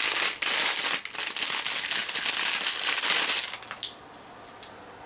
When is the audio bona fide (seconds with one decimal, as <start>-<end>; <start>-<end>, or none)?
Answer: 0.0-5.1